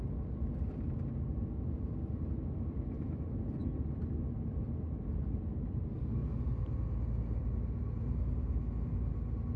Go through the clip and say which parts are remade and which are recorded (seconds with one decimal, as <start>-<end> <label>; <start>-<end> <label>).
0.0-5.9 recorded; 5.9-6.4 remade; 6.4-9.6 recorded